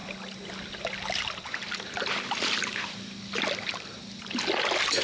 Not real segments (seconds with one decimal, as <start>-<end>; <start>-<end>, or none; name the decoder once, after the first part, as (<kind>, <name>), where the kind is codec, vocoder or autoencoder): none